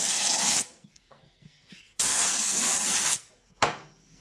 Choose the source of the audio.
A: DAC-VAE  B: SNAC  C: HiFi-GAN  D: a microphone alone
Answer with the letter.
B